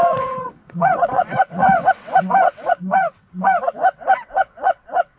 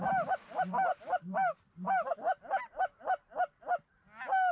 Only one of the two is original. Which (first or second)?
second